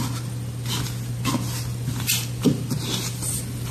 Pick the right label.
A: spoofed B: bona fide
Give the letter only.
B